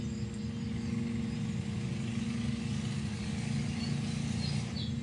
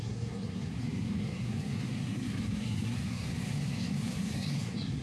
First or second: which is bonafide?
first